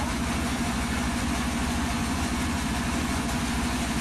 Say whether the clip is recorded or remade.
remade